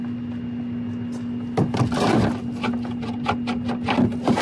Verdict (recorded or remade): recorded